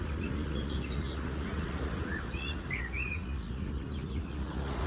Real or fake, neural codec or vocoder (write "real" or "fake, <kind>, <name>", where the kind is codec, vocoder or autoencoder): fake, vocoder, Vocos